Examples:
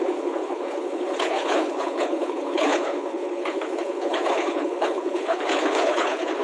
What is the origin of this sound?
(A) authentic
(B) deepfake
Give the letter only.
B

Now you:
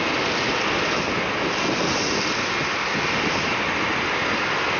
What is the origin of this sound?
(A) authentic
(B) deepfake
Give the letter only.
A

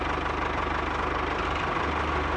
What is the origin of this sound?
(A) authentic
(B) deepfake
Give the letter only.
A